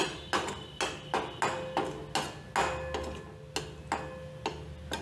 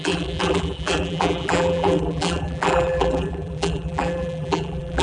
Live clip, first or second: first